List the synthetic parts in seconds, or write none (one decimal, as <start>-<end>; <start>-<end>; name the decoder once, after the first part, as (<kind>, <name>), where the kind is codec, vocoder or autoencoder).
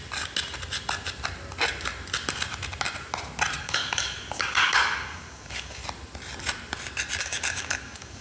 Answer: 3.6-5.8 (codec, DAC); 7.2-8.2